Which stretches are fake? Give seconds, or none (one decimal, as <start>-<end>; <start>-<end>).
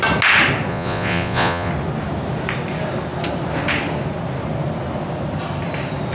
0.7-1.7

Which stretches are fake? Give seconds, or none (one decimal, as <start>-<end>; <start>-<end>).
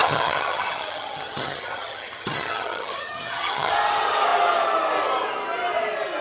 0.0-3.7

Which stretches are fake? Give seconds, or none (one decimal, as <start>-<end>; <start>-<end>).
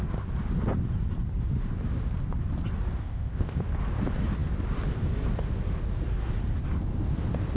3.0-3.6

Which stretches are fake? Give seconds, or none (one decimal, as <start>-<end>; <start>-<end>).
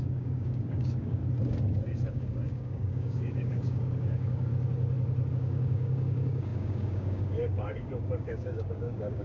0.0-1.2; 2.1-4.5; 5.3-9.2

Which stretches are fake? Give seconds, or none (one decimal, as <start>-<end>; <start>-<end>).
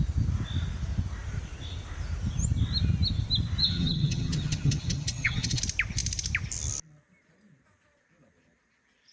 3.6-5.6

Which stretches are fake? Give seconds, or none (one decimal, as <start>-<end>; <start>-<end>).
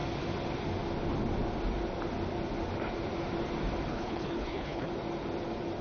3.9-4.9